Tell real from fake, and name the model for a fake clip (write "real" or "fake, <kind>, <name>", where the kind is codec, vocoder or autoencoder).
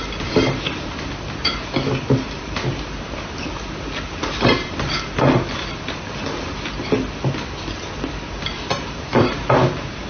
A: real